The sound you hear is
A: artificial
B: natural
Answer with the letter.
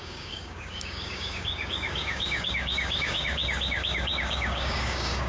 A